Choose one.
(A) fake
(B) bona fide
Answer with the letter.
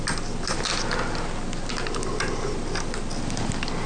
B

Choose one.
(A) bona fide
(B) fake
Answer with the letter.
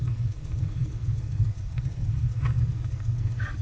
B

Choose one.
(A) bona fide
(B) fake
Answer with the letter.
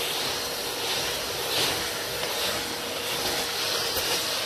A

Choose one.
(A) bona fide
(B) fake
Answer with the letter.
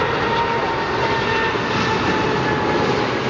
A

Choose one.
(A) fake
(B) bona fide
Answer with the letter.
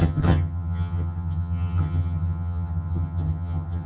A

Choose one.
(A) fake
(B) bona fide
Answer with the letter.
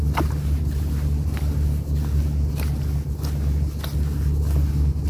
B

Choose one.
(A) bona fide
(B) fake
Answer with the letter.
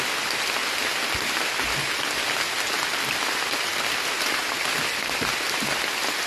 A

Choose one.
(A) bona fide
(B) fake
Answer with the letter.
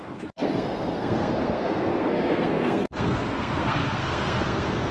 B